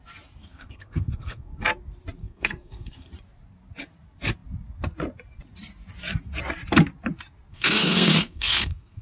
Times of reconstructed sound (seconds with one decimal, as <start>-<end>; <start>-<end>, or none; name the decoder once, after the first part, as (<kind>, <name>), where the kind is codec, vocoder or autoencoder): 0.4-1.5 (codec, SNAC); 2.2-3.1; 7.5-9.0